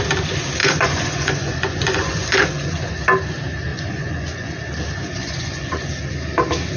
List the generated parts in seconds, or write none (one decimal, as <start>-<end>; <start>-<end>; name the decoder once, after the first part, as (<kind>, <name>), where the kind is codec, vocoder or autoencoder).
0.6-2.9 (vocoder, Vocos); 3.7-4.5; 5.2-5.9